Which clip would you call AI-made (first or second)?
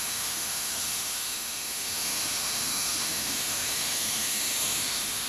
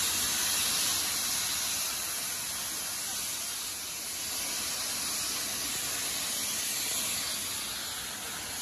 first